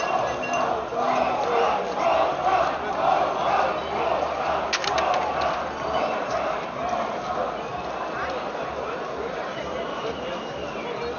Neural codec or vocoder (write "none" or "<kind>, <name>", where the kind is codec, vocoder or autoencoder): none